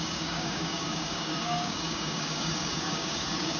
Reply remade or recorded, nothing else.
remade